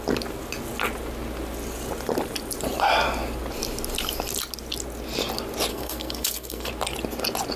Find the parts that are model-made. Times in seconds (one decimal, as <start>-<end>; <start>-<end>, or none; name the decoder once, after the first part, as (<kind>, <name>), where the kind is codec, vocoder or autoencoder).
5.7-6.7 (codec, SNAC)